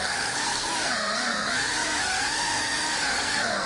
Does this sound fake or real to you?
fake